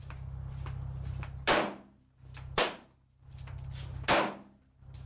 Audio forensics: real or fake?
real